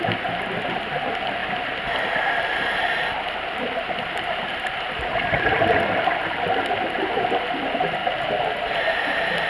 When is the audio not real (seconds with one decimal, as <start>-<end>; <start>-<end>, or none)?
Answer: 0.0-1.4; 2.2-8.0; 8.7-9.5